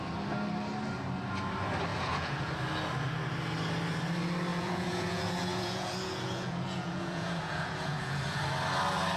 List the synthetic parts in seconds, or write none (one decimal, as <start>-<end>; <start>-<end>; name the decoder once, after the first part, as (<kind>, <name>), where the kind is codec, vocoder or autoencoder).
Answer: 1.9-2.5 (vocoder, Vocos); 4.5-8.4